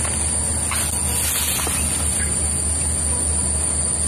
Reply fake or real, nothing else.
real